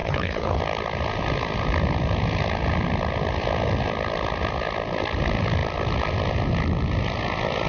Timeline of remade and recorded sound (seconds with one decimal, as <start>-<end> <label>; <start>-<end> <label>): 0.0-0.6 remade; 0.6-7.7 recorded